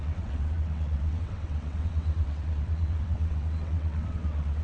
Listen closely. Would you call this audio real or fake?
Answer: fake